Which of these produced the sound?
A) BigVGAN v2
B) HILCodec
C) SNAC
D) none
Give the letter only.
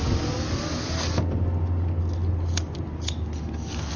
D